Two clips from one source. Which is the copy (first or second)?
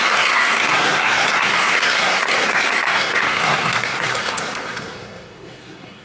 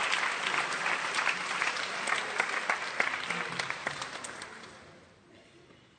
first